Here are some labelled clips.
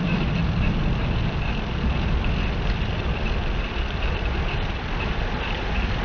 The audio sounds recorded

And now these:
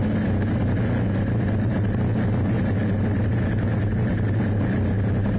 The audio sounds recorded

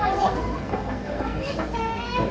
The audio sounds remade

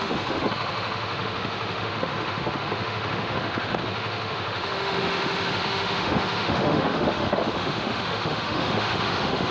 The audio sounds remade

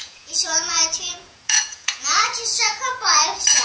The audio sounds remade